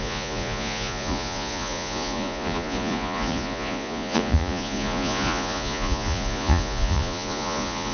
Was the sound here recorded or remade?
remade